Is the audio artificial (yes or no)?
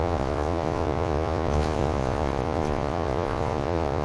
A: yes